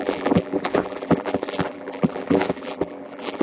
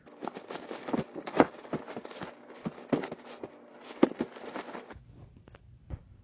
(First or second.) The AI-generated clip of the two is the first